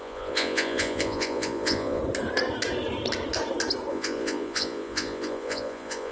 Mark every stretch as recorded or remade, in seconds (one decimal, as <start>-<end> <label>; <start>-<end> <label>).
0.0-2.0 remade; 2.0-3.9 recorded; 3.9-6.1 remade